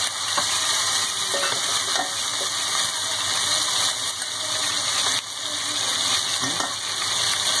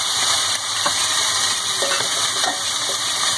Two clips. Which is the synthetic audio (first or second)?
second